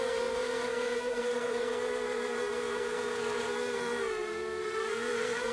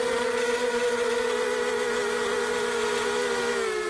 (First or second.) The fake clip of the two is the first